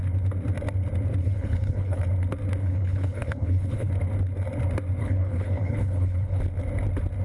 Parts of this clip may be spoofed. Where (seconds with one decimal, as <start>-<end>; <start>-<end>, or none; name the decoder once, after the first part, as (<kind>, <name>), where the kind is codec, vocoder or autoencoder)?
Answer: 1.2-2.0 (codec, HILCodec); 2.6-3.9; 5.0-6.4